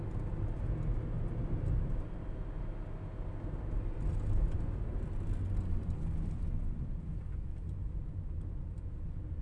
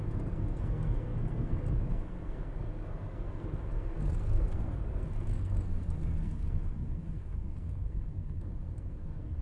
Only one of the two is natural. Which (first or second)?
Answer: first